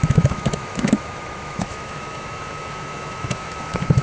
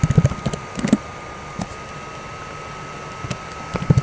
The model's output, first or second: first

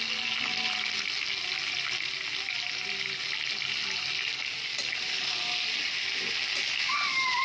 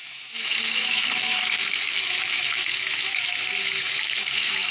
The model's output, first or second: second